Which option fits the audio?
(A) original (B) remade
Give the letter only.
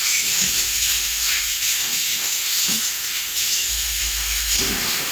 B